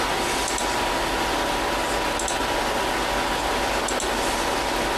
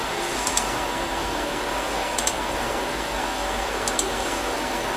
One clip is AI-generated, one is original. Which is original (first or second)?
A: first